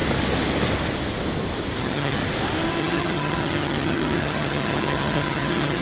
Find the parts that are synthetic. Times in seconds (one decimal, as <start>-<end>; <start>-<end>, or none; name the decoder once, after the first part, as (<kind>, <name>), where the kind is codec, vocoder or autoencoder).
1.8-2.2 (vocoder, HiFi-GAN); 2.8-5.8

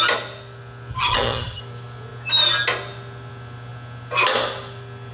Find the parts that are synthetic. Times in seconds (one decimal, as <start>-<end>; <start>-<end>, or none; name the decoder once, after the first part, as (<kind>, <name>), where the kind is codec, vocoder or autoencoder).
0.9-1.6 (vocoder, HiFi-GAN)

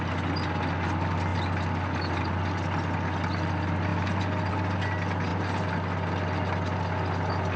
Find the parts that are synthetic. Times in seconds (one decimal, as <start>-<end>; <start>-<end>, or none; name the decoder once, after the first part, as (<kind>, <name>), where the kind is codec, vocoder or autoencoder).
none

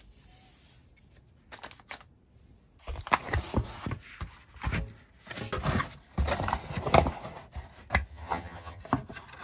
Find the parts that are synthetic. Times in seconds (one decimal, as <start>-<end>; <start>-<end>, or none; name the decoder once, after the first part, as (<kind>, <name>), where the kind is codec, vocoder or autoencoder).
8.1-8.8 (vocoder, HiFi-GAN)

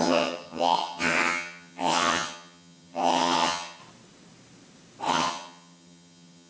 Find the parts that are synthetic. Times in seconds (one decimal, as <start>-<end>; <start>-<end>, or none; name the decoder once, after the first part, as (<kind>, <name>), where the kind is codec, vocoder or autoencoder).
0.0-3.8 (vocoder, HiFi-GAN); 5.1-6.5